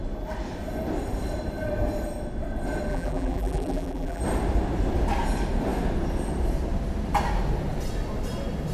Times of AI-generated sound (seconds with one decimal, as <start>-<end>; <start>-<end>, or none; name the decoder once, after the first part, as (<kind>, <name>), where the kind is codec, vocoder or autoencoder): 2.9-4.2 (vocoder, BigVGAN v2)